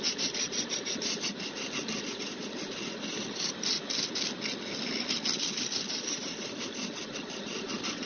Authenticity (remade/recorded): recorded